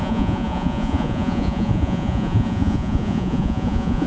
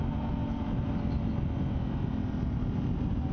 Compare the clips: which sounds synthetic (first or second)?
first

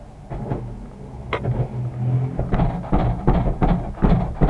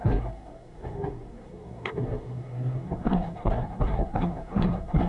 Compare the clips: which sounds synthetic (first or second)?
second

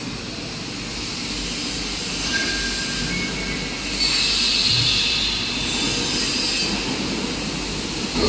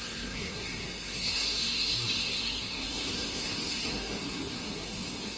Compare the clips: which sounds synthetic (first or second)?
second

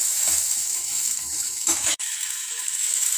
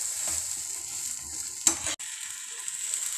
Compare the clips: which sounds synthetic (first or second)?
first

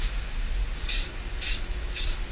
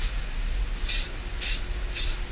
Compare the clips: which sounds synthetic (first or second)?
first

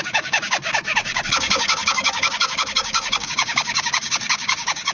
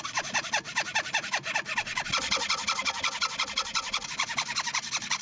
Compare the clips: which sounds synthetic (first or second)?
first